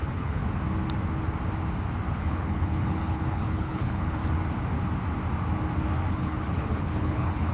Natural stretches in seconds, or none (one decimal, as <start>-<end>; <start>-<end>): 0.4-2.2; 4.2-6.1